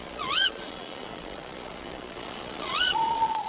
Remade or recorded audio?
remade